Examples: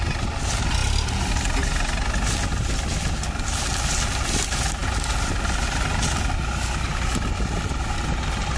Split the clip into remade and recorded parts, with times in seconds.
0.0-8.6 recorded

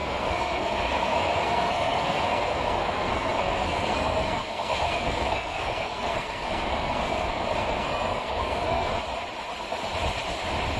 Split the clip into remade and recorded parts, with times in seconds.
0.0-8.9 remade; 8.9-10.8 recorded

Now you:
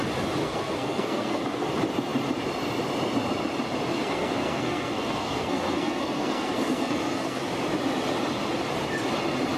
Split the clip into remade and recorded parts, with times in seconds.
0.0-0.4 recorded; 0.4-1.4 remade; 1.4-3.9 recorded; 3.9-7.4 remade; 7.4-9.6 recorded